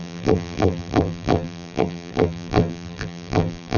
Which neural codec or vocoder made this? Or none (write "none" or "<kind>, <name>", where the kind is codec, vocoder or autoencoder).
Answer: vocoder, BigVGAN v2